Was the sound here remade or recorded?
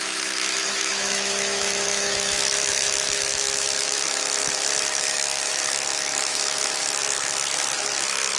remade